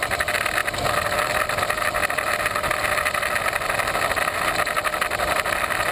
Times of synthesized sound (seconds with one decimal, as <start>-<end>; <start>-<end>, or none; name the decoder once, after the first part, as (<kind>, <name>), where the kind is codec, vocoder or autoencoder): none